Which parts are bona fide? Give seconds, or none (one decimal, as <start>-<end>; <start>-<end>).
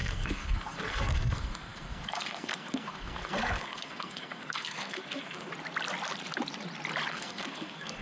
5.5-7.1